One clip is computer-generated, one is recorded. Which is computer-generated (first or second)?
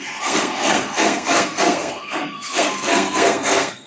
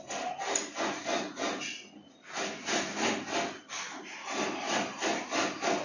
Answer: first